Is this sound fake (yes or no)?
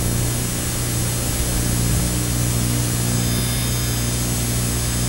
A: no